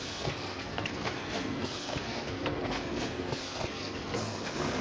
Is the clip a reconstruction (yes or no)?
yes